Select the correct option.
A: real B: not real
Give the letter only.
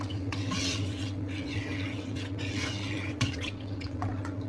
B